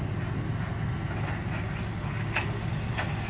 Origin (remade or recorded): recorded